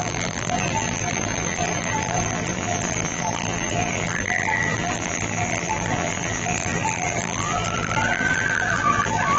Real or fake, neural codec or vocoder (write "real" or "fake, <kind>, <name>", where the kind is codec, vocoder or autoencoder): fake, vocoder, BigVGAN v2